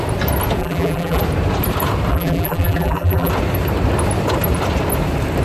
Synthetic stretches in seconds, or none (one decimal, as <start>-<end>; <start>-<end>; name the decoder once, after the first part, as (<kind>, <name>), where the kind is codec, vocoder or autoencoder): 0.6-1.2 (vocoder, BigVGAN v2); 2.1-3.3